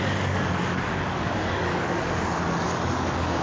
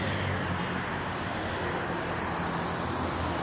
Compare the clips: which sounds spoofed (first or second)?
first